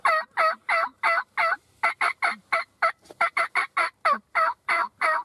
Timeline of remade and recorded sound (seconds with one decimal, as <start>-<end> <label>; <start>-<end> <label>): 0.0-2.4 recorded; 2.4-3.5 remade; 3.5-5.2 recorded

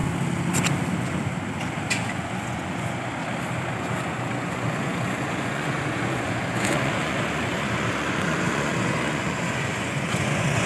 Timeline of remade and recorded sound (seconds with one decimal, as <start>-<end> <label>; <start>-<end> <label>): 0.0-1.9 recorded; 1.9-3.2 remade; 3.2-3.7 recorded; 3.7-10.7 remade

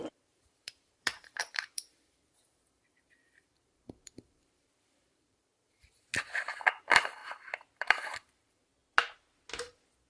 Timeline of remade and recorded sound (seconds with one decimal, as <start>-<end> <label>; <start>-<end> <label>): 0.0-6.1 remade; 6.1-6.8 recorded; 6.8-7.2 remade; 7.2-7.7 recorded; 7.7-8.7 remade; 8.7-10.1 recorded